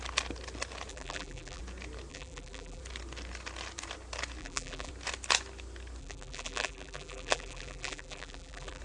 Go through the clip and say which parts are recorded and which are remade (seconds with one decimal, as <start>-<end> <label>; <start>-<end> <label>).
0.0-0.9 recorded; 0.9-1.6 remade; 1.6-2.1 recorded; 2.1-2.8 remade; 2.8-4.4 recorded; 4.4-4.9 remade; 4.9-6.0 recorded; 6.0-8.8 remade